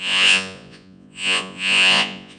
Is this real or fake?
fake